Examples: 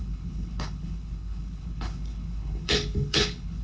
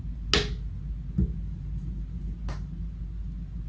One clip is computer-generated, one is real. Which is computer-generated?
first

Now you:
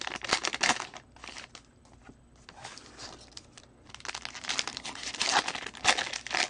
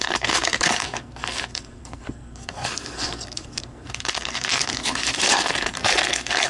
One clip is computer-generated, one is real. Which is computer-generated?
second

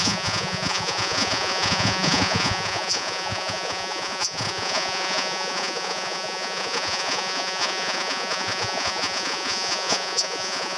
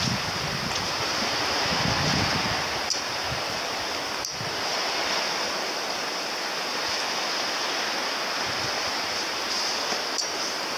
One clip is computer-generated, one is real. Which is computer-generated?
first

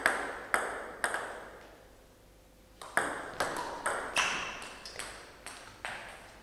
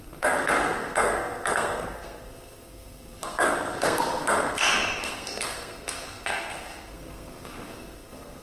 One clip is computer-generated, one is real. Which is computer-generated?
second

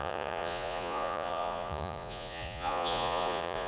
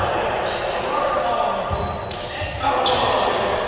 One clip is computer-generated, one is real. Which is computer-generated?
first